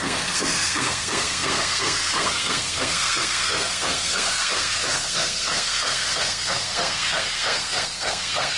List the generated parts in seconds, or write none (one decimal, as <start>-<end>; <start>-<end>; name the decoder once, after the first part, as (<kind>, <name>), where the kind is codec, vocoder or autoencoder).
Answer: 0.0-8.6 (codec, SNAC)